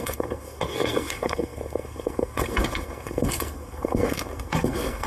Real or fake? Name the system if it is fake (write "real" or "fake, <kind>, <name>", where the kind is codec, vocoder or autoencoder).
fake, codec, SNAC